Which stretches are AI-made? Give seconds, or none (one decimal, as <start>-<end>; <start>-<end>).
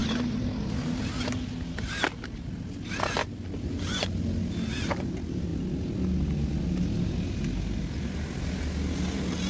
none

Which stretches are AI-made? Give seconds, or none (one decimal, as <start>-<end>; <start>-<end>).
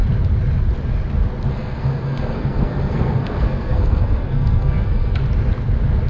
1.5-5.2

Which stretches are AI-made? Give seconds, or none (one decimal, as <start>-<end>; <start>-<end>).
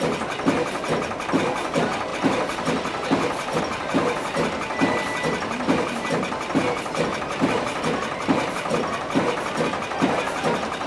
none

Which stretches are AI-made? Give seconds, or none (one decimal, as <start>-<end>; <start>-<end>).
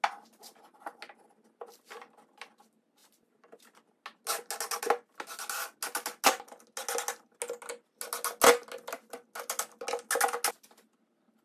none